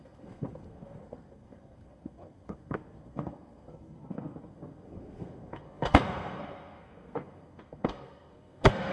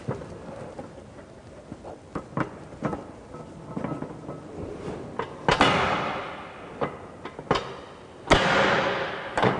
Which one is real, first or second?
second